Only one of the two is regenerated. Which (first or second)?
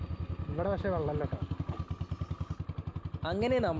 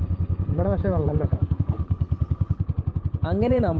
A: second